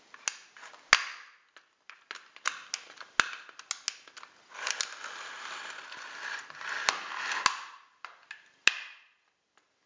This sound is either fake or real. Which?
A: real